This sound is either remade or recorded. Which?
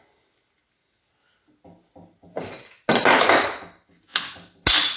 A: recorded